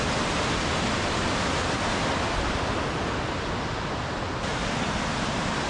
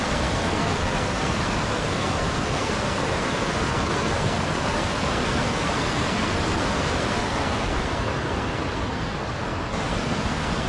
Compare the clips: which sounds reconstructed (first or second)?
second